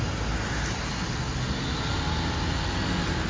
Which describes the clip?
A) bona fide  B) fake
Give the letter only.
A